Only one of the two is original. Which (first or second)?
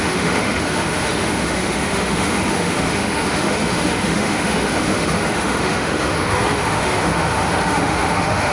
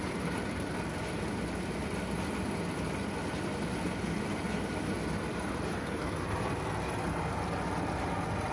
second